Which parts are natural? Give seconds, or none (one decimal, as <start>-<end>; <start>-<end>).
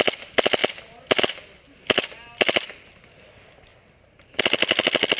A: 0.0-5.2